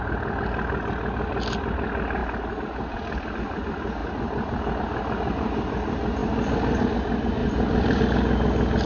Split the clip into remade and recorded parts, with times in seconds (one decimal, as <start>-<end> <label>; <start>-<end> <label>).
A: 0.0-7.4 recorded; 7.4-8.0 remade; 8.0-8.9 recorded